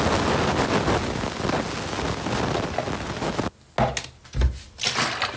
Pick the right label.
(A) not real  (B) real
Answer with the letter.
B